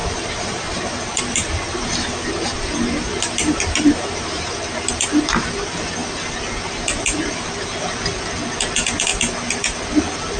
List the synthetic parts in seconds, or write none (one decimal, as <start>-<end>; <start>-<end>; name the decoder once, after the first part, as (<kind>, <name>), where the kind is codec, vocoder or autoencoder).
0.0-4.9 (vocoder, BigVGAN v2)